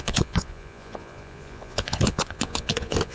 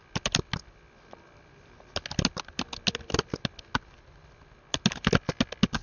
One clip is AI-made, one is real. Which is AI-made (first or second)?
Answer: first